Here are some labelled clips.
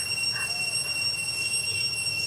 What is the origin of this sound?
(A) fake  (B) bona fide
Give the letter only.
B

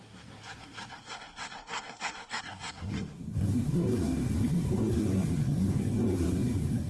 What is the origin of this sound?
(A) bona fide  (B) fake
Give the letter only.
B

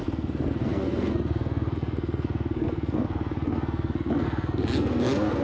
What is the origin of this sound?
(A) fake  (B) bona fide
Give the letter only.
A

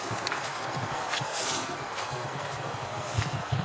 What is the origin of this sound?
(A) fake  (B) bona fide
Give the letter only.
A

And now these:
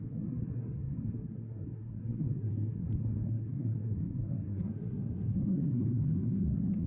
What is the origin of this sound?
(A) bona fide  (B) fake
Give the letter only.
B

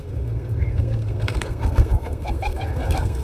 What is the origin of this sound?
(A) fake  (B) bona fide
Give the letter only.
A